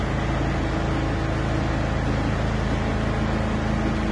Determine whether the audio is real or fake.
real